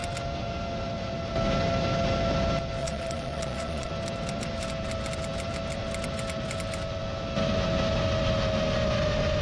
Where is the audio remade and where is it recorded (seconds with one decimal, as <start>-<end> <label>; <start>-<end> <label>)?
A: 0.0-2.8 recorded; 2.8-3.9 remade; 3.9-9.4 recorded

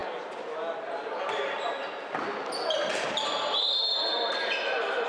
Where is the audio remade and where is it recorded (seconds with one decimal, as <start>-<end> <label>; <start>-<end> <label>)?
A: 0.0-5.1 recorded